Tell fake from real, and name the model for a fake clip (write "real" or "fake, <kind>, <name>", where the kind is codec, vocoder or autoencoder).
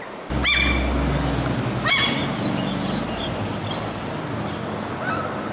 real